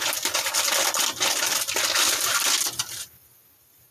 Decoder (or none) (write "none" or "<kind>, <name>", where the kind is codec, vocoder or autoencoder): none